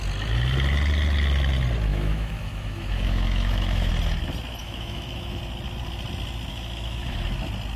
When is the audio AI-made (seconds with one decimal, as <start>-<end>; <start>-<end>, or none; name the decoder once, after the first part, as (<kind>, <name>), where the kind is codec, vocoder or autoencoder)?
1.9-3.9 (autoencoder, DAC-VAE); 4.6-5.4; 6.5-7.2